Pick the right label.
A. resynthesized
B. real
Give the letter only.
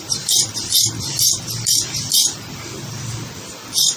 B